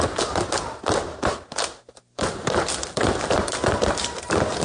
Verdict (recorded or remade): recorded